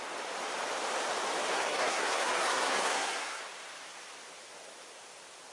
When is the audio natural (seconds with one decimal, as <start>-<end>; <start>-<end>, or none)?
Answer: 0.0-1.5; 3.4-5.5